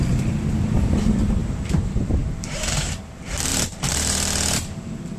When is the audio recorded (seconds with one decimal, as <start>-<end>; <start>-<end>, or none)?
0.0-1.4; 2.9-3.5